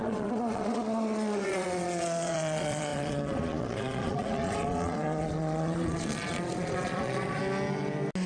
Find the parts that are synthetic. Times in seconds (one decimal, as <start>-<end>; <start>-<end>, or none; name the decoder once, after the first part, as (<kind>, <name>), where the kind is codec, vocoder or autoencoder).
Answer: 0.0-7.4 (vocoder, Vocos)